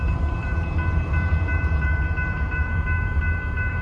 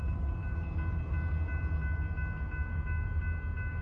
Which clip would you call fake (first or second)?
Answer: first